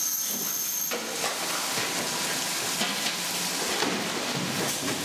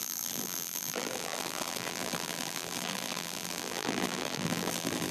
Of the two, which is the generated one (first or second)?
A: second